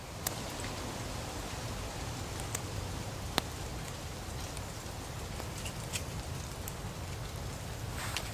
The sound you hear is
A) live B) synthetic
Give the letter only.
A